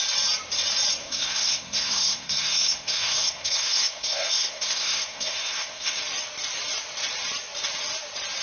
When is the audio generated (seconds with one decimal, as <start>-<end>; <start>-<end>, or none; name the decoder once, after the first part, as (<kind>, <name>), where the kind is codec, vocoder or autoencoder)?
1.0-6.0 (codec, SNAC)